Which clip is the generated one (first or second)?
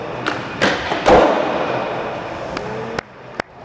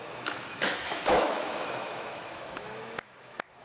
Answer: second